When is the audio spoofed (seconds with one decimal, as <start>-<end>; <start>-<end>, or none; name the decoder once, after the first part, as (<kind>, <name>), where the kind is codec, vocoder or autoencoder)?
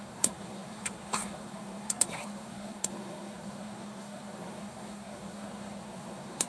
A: 0.0-6.5 (codec, SNAC)